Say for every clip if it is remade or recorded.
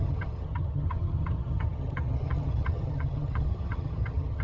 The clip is remade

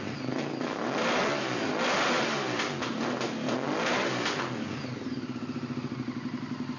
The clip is recorded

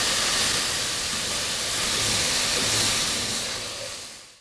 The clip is recorded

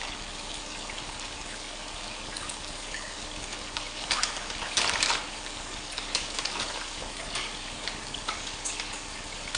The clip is remade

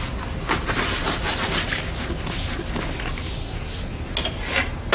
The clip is recorded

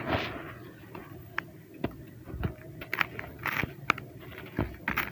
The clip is recorded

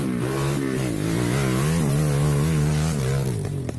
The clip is recorded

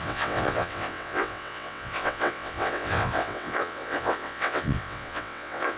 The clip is remade